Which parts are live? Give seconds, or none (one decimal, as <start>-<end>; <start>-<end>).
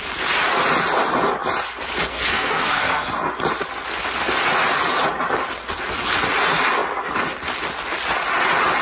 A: 0.0-2.1; 3.1-8.8